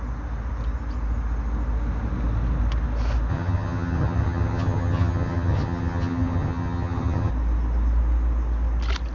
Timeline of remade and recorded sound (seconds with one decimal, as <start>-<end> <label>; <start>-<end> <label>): 0.0-3.3 recorded; 3.3-7.3 remade; 7.3-9.1 recorded